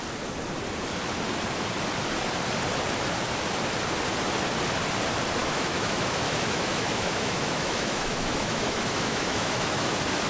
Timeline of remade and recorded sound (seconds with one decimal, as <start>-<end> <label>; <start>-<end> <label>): 0.0-5.4 recorded; 5.4-9.9 remade; 9.9-10.3 recorded